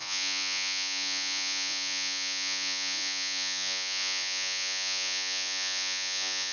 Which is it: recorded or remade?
remade